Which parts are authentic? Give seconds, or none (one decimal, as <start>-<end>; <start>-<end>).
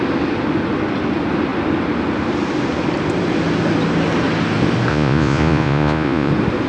0.0-4.9; 6.3-6.7